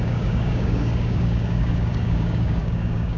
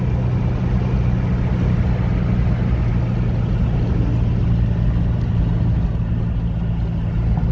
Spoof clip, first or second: first